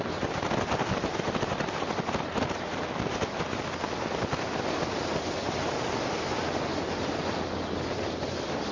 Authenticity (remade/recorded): recorded